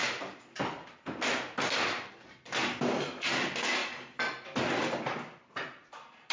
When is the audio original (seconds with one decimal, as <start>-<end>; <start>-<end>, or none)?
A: 0.0-2.1; 3.8-6.3